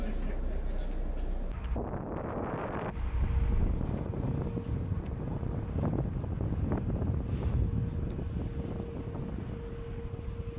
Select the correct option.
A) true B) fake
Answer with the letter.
A